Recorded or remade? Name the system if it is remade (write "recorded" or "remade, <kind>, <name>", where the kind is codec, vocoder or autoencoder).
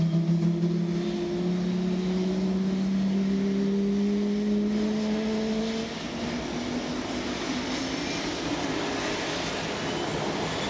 recorded